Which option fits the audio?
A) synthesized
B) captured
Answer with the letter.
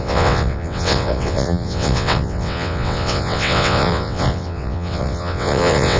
A